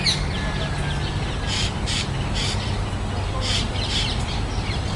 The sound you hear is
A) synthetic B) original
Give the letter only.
B